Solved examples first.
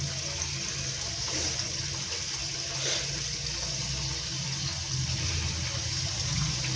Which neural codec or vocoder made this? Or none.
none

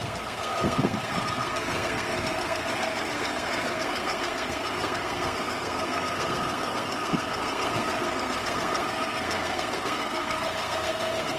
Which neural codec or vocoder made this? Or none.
codec, SNAC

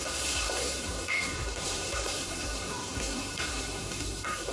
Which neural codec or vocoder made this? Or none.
codec, SNAC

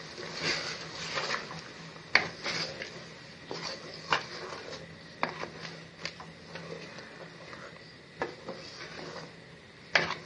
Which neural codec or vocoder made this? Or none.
none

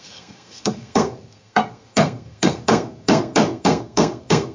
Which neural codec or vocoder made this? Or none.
codec, SNAC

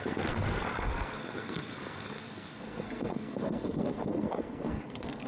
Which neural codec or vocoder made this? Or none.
codec, SNAC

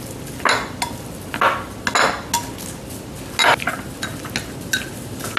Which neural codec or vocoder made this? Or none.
none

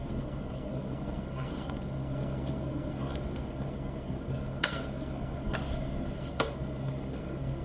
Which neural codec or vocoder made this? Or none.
codec, SNAC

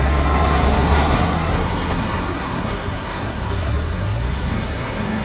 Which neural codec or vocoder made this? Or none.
codec, SNAC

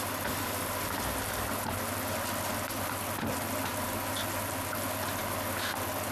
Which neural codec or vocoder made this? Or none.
none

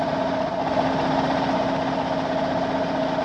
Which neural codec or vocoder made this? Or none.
none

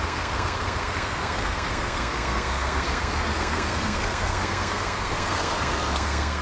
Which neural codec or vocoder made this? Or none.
codec, SNAC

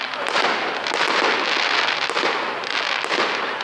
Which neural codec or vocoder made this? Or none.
none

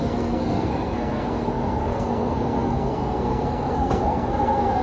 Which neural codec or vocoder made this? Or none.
codec, SNAC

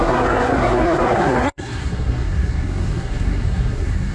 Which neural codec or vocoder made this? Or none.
codec, SNAC